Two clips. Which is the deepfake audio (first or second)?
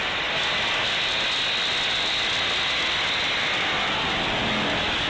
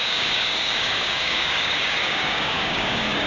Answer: second